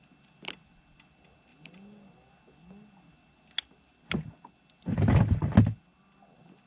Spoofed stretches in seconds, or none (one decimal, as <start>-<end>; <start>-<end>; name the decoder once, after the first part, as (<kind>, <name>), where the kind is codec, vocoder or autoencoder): none